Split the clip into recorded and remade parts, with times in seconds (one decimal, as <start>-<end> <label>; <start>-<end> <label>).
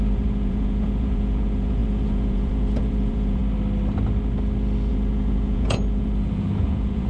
0.0-3.4 remade; 3.4-4.9 recorded; 4.9-7.1 remade